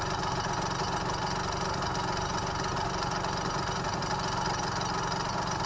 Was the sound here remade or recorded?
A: recorded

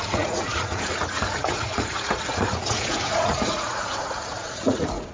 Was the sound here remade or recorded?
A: remade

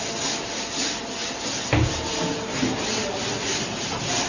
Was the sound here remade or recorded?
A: recorded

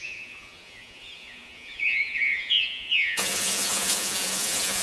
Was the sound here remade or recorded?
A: remade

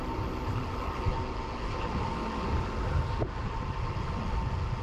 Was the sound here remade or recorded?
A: recorded